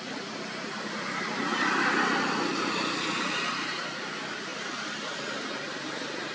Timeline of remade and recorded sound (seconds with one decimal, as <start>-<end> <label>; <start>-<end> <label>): 0.0-6.3 recorded